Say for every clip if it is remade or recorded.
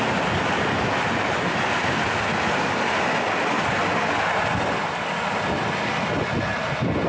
recorded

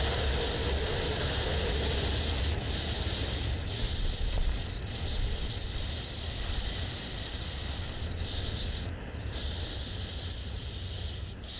recorded